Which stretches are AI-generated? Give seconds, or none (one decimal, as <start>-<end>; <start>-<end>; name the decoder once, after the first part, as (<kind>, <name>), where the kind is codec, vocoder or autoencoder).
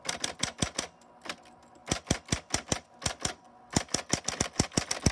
none